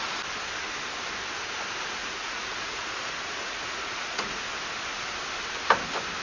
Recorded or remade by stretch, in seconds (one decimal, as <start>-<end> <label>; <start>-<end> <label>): 0.0-2.0 recorded; 2.0-4.4 remade; 4.4-6.2 recorded